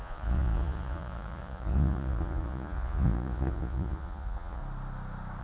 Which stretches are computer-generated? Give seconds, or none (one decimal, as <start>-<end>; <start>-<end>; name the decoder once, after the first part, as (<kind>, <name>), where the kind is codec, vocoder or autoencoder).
0.0-4.6 (vocoder, Vocos)